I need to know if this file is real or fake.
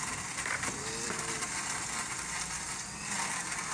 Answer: fake